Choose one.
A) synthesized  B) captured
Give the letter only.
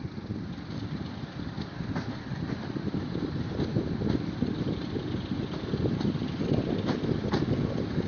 B